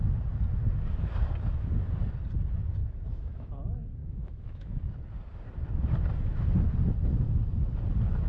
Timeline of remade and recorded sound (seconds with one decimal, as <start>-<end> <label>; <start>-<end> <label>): 0.0-2.8 recorded; 2.8-3.5 remade; 3.5-4.0 recorded; 4.0-4.8 remade; 4.8-8.3 recorded